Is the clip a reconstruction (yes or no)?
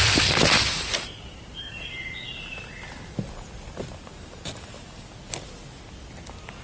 no